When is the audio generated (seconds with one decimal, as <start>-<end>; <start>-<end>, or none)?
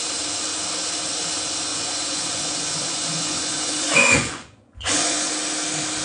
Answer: 1.7-5.3